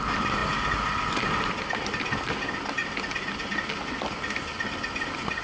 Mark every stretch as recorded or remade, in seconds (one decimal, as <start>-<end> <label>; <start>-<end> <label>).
0.0-5.4 recorded